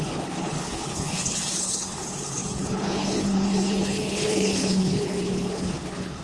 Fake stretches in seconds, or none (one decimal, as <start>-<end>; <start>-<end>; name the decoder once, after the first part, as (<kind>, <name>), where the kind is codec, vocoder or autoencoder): 0.0-6.2 (codec, HILCodec)